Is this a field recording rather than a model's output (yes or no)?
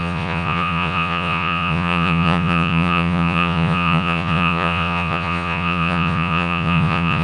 no